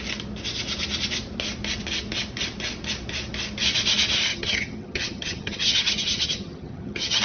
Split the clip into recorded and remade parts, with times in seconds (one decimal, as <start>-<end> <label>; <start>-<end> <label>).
0.0-4.3 recorded; 4.3-7.2 remade